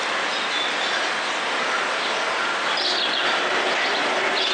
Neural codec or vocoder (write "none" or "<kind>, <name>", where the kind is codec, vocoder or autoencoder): none